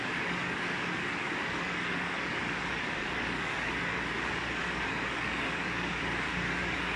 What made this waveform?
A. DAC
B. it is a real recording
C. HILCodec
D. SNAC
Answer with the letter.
A